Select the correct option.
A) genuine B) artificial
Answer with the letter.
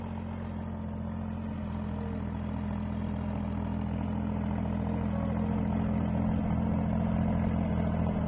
A